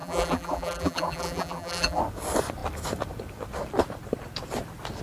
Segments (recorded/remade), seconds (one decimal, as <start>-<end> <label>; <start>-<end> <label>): 0.0-2.0 remade; 2.0-5.0 recorded